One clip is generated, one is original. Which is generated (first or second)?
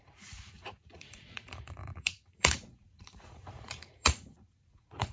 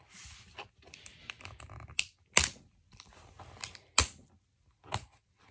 first